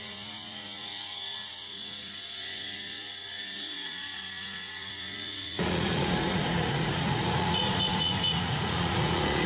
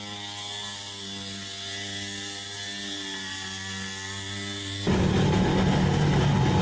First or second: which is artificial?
first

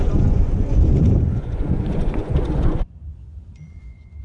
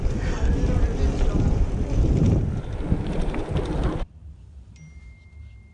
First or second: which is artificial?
first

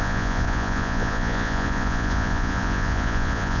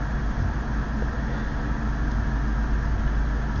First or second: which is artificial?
first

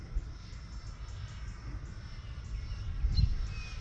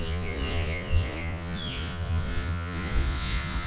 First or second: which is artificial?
second